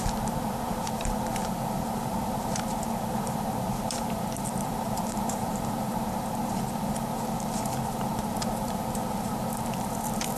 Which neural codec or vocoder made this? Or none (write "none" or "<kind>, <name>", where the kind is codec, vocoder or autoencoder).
vocoder, BigVGAN v2